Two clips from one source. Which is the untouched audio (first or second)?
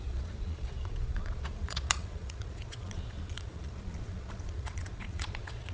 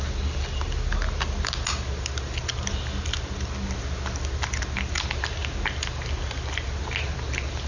second